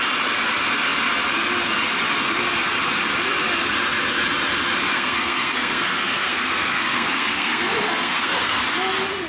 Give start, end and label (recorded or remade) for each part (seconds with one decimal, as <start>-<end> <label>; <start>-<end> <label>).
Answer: 0.0-4.9 recorded; 4.9-8.6 remade; 8.6-9.3 recorded